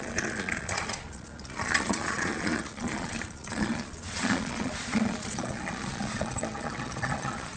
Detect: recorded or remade remade